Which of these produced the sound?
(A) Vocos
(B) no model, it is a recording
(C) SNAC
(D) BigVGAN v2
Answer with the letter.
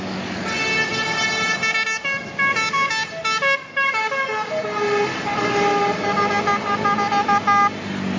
B